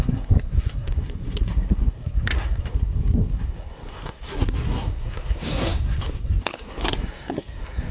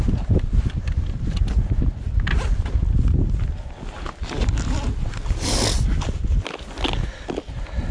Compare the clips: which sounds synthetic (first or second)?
first